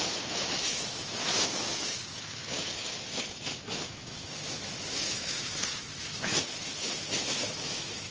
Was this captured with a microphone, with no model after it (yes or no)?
no